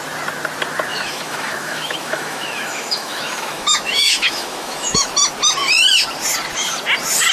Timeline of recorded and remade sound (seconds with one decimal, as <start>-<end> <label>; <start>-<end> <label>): 0.0-0.9 recorded; 0.9-5.1 remade; 5.1-7.3 recorded